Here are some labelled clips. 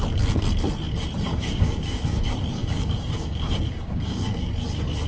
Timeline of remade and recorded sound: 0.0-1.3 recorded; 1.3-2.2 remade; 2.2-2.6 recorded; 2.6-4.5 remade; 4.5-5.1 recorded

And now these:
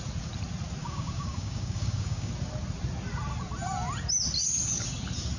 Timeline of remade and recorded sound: 0.0-0.8 recorded; 0.8-2.3 remade; 2.3-5.4 recorded

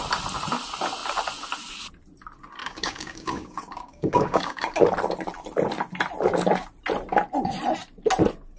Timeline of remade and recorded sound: 0.0-2.6 recorded; 2.6-4.8 remade; 4.8-8.6 recorded

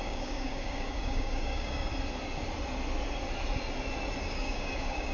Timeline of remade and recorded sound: 0.0-1.9 remade; 1.9-4.2 recorded; 4.2-5.1 remade